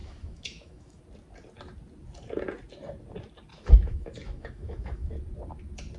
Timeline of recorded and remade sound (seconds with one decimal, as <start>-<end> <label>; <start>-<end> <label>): 0.0-1.0 remade; 1.0-3.5 recorded; 3.5-5.1 remade; 5.1-6.0 recorded